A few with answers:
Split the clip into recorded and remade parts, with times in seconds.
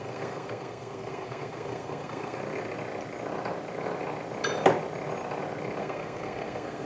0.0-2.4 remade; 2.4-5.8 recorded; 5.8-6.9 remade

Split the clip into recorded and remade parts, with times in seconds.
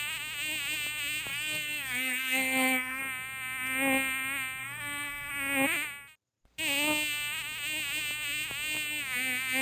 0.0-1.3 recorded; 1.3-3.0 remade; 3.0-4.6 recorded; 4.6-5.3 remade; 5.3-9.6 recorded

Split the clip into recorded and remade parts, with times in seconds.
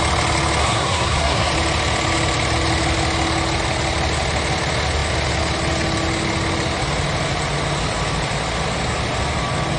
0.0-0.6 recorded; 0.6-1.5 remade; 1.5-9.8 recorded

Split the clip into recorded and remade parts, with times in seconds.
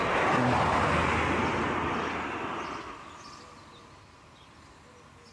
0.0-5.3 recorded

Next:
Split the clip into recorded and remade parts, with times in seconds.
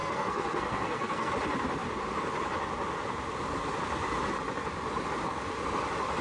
0.0-1.3 remade; 1.3-6.2 recorded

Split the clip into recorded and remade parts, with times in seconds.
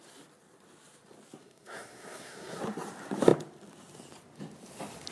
0.0-1.4 recorded; 1.4-2.6 remade; 2.6-5.1 recorded